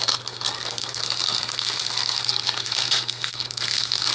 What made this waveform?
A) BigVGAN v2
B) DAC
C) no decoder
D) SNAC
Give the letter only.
D